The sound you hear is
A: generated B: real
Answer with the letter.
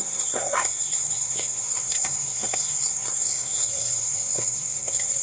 A